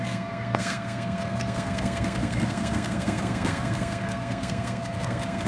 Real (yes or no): no